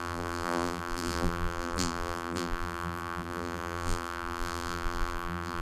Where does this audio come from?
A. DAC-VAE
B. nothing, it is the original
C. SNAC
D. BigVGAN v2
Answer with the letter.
D